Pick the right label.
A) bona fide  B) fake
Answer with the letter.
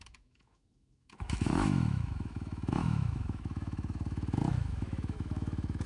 B